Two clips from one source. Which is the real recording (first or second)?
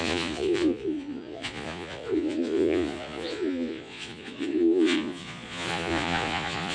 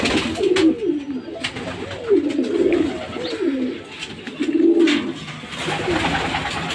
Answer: second